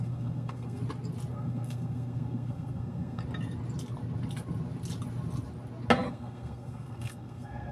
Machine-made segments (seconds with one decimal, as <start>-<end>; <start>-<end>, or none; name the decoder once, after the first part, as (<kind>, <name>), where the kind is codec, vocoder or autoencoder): 0.0-0.8 (codec, SNAC); 1.3-3.2; 6.1-7.7